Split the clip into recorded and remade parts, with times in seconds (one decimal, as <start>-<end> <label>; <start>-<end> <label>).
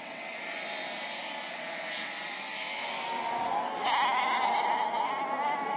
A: 0.0-0.4 remade; 0.4-1.5 recorded; 1.5-2.1 remade; 2.1-5.8 recorded